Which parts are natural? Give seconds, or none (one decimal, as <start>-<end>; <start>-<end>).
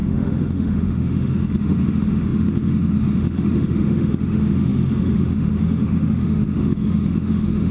none